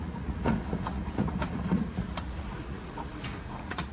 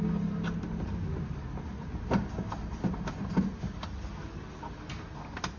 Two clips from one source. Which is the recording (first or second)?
second